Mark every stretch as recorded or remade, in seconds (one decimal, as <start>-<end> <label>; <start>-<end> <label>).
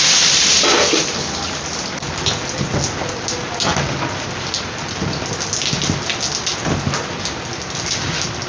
0.0-8.5 recorded